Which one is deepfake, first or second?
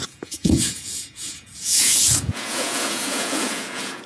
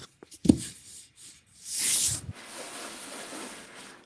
first